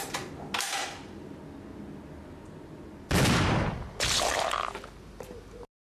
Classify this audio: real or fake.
real